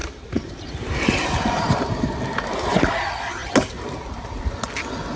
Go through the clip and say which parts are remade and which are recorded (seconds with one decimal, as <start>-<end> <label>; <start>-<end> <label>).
0.0-2.2 remade; 2.2-5.2 recorded